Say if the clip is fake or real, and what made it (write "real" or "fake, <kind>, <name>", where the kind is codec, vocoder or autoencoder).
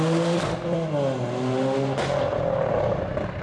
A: real